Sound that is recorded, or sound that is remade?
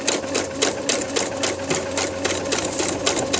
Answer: recorded